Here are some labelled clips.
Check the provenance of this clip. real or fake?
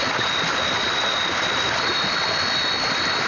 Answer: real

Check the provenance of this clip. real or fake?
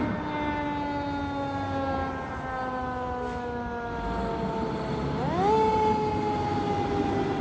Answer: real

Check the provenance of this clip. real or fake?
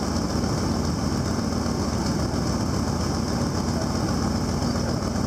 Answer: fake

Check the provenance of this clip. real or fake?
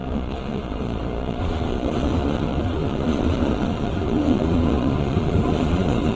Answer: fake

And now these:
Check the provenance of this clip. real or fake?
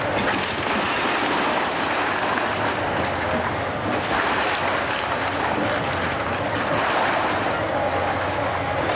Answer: real